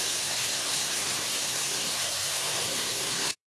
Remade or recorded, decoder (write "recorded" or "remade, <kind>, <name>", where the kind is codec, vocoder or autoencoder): remade, codec, SNAC